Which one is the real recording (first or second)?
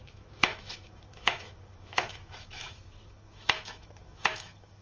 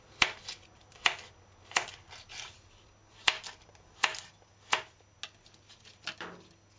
second